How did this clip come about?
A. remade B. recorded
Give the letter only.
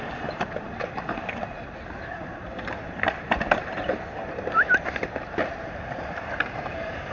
A